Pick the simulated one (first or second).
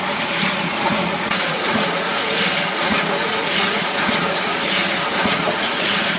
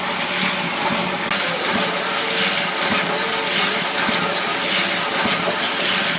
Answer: first